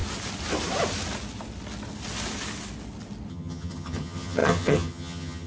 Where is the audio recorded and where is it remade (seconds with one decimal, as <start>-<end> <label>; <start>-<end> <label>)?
0.0-3.3 recorded; 3.3-5.5 remade